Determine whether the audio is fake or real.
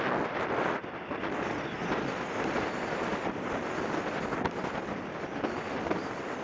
real